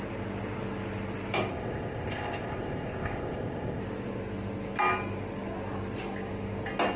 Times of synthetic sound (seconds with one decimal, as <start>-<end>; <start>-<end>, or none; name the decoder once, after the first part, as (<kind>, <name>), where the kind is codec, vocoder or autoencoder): 1.5-3.8 (codec, ZipCodec)